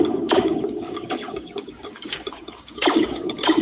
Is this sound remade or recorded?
remade